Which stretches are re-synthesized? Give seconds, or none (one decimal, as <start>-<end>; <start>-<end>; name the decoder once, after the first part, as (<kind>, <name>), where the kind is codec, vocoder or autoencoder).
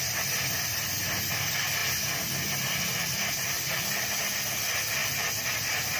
0.0-5.0 (vocoder, BigVGAN v2)